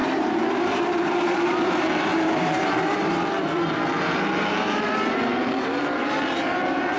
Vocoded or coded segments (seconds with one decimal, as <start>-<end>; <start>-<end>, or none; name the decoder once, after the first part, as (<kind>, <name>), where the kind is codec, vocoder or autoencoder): 0.0-7.0 (vocoder, BigVGAN v2)